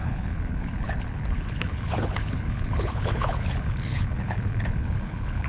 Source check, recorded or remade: remade